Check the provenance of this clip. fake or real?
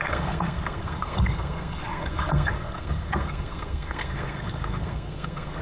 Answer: fake